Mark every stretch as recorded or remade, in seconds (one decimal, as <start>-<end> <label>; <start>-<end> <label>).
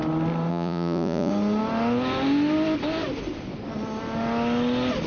0.0-0.5 recorded; 0.5-1.3 remade; 1.3-5.1 recorded